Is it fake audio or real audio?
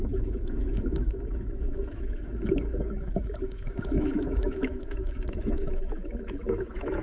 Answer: fake